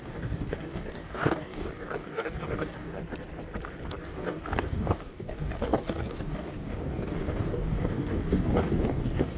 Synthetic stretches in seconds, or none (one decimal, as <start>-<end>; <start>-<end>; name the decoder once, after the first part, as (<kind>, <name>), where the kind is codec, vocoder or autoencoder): 0.0-3.0 (codec, DAC); 4.0-9.4